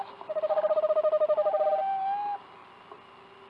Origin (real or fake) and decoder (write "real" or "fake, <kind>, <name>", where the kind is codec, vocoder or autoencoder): real